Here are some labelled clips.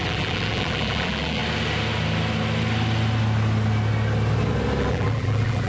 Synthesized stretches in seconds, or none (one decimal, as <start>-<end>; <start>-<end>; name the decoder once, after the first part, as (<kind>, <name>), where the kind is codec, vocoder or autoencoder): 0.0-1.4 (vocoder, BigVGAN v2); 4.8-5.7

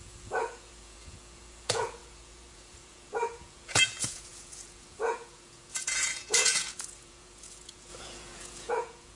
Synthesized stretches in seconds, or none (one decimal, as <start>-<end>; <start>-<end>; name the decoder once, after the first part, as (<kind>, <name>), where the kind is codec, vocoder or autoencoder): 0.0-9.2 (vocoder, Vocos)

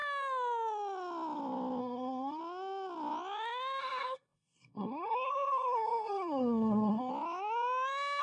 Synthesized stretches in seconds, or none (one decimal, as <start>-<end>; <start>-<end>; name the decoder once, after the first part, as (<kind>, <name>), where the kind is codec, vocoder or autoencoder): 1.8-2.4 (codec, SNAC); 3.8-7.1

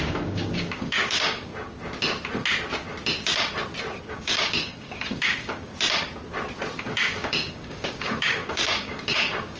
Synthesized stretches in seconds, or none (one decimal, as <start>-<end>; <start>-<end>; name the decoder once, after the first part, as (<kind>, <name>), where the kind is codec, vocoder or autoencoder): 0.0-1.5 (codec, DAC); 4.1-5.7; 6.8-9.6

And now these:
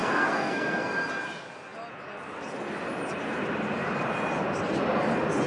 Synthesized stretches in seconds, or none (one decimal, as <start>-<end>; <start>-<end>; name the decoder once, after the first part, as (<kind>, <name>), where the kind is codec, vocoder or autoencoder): 0.0-1.1 (codec, SNAC)

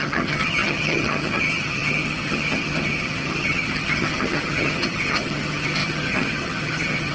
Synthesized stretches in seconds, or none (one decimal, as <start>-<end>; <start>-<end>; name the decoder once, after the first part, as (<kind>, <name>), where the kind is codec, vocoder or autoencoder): 0.0-7.1 (vocoder, HiFi-GAN)